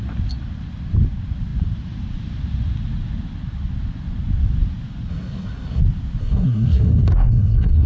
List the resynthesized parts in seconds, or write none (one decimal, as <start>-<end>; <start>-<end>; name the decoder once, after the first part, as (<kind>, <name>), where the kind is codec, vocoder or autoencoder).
5.1-5.8 (codec, SNAC); 6.2-7.9